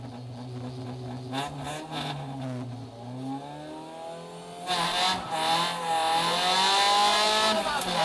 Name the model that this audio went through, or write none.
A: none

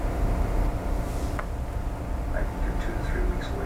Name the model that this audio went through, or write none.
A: none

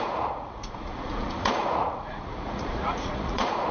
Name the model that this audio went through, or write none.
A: vocoder, Vocos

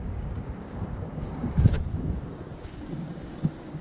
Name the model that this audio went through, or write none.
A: codec, DAC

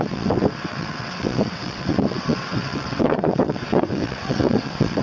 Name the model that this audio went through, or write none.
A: vocoder, WaveNeXt